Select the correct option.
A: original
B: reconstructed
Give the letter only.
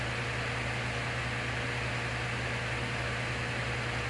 A